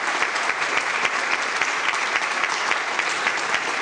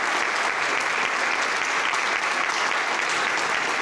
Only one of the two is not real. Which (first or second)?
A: first